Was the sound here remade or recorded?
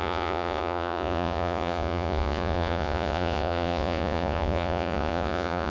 remade